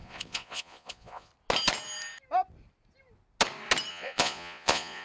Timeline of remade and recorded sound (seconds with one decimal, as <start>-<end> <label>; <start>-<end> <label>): 0.0-1.3 remade; 1.3-3.9 recorded; 3.9-5.0 remade